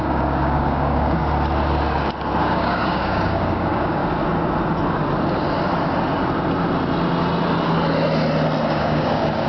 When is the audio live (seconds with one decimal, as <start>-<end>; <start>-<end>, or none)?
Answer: 1.2-2.4; 4.0-8.7